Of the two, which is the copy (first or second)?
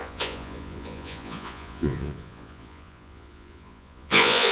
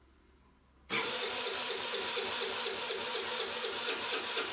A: first